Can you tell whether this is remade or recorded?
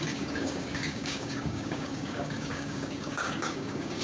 remade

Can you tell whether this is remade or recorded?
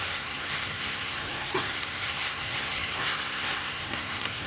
remade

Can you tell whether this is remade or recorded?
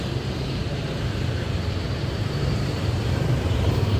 remade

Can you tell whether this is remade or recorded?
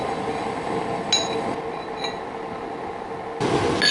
recorded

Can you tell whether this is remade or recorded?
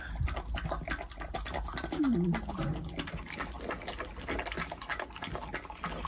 recorded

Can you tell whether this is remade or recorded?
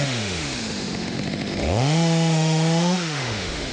remade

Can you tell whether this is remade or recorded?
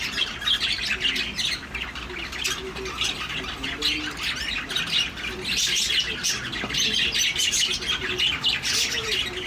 recorded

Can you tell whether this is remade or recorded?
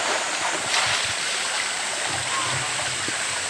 recorded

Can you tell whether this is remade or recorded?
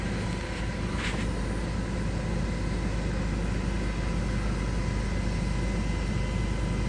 recorded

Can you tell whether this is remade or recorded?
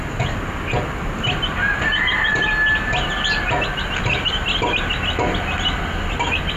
recorded